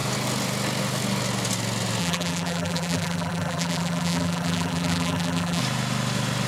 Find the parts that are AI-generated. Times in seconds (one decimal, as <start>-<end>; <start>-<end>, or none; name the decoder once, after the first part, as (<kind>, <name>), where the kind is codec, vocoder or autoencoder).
2.0-5.6 (vocoder, BigVGAN v2)